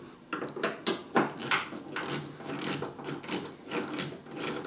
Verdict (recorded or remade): recorded